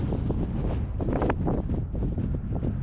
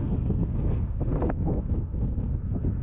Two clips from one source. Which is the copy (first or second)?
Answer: second